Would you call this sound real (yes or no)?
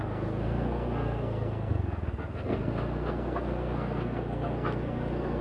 no